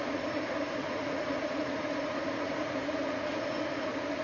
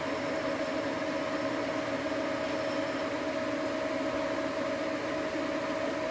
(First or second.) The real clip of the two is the second